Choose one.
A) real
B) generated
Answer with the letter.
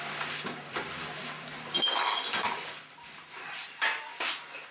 B